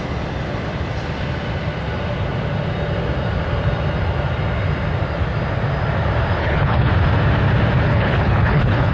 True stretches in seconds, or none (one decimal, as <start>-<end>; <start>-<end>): 0.0-6.4; 6.9-7.9